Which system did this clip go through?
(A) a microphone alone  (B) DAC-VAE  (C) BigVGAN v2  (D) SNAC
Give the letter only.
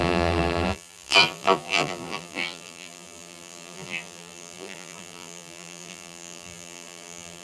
C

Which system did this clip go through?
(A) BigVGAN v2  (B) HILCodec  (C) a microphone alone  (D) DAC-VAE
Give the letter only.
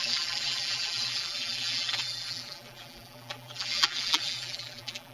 A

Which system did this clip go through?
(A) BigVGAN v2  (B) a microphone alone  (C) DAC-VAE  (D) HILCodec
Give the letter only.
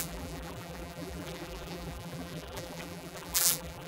A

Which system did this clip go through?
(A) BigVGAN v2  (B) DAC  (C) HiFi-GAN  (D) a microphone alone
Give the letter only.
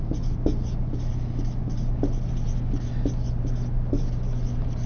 D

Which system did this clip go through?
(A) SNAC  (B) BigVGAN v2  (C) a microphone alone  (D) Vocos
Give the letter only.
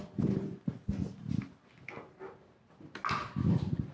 C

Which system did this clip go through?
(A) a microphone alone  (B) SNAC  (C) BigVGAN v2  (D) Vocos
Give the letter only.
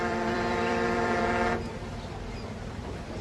C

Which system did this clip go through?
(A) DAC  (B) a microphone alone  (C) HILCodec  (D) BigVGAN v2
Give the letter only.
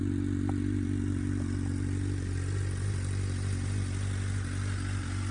B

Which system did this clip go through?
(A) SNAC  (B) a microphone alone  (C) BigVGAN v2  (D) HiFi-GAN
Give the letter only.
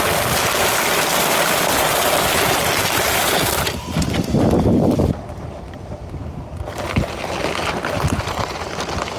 C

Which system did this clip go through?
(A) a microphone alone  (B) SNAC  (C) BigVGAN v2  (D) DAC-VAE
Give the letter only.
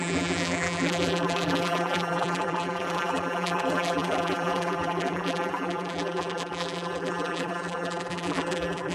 C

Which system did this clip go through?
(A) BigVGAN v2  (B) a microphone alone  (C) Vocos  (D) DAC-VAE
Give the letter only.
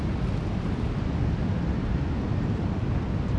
B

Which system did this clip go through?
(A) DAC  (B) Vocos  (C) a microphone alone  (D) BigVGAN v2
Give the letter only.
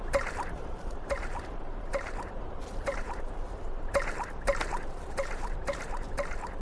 D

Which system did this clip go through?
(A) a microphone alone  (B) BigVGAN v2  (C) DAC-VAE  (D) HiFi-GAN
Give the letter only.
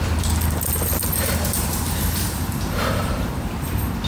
B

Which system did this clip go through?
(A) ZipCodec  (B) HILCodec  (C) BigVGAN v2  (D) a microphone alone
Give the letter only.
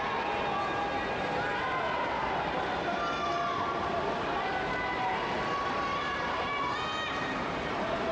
D